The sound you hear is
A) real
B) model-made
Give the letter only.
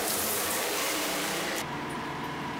B